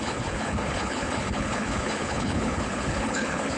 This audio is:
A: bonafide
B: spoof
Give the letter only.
B